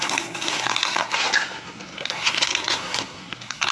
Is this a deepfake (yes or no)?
yes